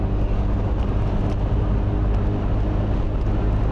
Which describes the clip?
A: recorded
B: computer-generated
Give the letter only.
A